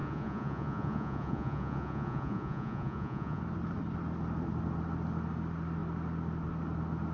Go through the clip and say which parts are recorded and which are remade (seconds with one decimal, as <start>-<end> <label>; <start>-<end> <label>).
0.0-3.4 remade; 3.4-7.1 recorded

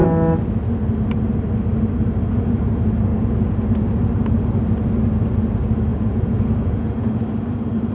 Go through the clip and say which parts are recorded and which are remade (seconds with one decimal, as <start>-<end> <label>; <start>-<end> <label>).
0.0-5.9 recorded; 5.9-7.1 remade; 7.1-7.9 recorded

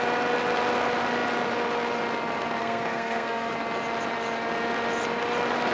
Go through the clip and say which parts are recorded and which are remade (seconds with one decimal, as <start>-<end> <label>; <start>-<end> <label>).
0.0-2.6 recorded; 2.6-3.5 remade; 3.5-5.7 recorded

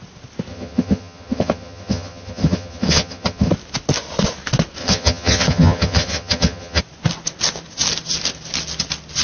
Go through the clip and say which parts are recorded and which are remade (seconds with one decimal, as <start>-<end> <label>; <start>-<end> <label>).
0.0-0.5 recorded; 0.5-3.5 remade; 3.5-4.8 recorded; 4.8-6.8 remade; 6.8-9.2 recorded

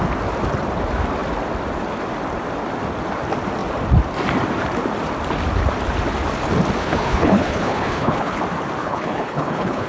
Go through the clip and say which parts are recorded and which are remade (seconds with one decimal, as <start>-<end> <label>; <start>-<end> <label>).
0.0-6.8 recorded; 6.8-8.4 remade; 8.4-8.8 recorded; 8.8-9.9 remade

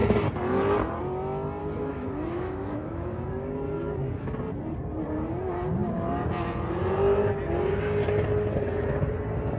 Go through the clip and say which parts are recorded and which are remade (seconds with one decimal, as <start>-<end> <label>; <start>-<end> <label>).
0.0-1.6 recorded; 1.6-3.3 remade; 3.3-9.6 recorded

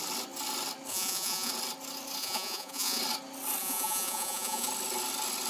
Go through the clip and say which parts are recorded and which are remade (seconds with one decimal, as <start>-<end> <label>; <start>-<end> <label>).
0.0-0.9 recorded; 0.9-1.5 remade; 1.5-2.2 recorded; 2.2-3.0 remade; 3.0-3.6 recorded; 3.6-4.7 remade; 4.7-5.5 recorded